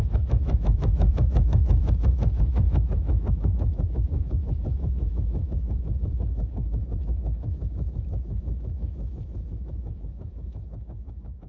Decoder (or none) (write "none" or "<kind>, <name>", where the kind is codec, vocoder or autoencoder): autoencoder, DAC-VAE